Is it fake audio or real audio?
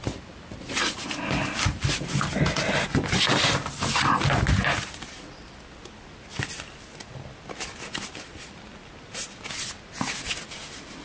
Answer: real